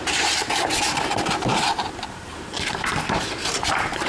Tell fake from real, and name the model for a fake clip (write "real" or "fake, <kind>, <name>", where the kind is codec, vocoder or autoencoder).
fake, vocoder, BigVGAN v2